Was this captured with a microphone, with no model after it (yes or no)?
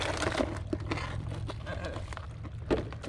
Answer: yes